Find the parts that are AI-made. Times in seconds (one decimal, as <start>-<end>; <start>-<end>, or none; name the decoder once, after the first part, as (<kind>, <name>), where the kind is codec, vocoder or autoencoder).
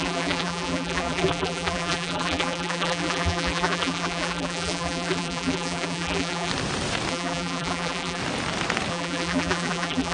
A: 0.0-6.5 (vocoder, BigVGAN v2); 7.1-8.2; 8.9-10.1